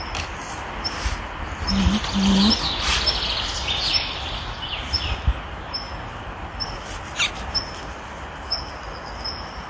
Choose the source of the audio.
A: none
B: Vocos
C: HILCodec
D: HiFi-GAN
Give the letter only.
A